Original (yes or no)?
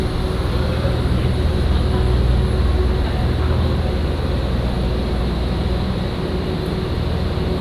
yes